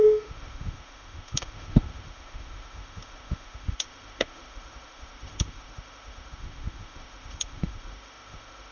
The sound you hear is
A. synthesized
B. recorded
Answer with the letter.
A